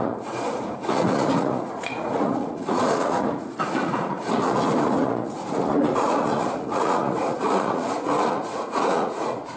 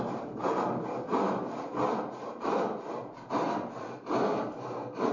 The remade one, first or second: first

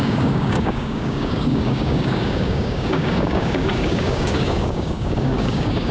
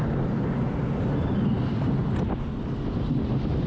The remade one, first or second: first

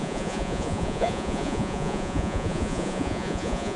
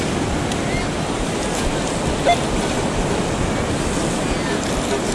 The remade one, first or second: first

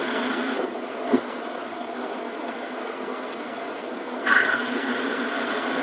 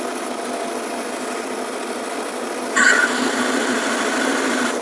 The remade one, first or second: first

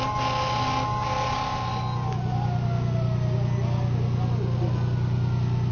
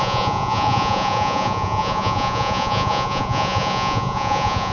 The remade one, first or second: second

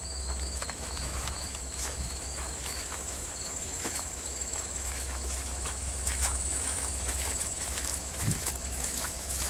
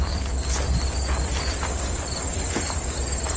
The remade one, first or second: first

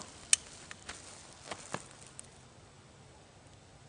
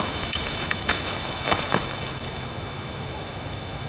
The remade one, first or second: second